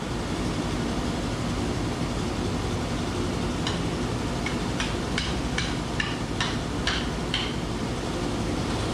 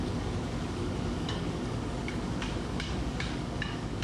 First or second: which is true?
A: first